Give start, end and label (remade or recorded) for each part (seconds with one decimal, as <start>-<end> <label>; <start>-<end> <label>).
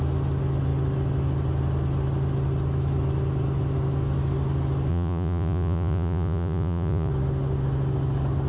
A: 0.0-4.9 recorded; 4.9-7.1 remade; 7.1-8.5 recorded